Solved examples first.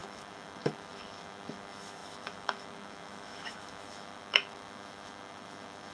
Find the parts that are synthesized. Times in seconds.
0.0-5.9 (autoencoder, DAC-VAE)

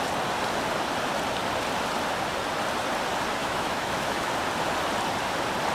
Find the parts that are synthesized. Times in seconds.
3.4-4.3 (autoencoder, DAC-VAE)

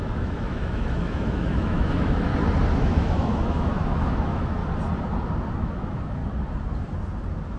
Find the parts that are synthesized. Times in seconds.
0.0-2.3 (autoencoder, DAC-VAE); 2.8-4.6; 5.6-6.2

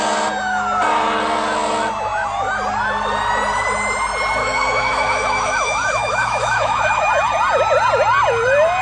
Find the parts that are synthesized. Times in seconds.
4.4-7.1 (autoencoder, DAC-VAE)

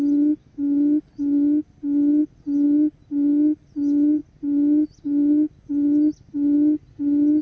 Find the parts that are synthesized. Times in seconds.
0.4-1.0 (autoencoder, DAC-VAE)

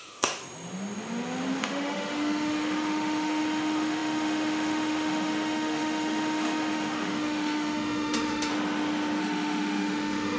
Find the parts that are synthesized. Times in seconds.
0.0-0.4 (autoencoder, DAC-VAE); 1.6-8.5; 9.2-10.4

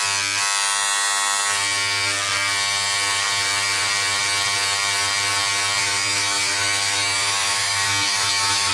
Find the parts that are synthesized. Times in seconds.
5.8-8.7 (autoencoder, DAC-VAE)